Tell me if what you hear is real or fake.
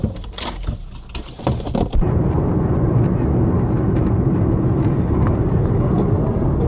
real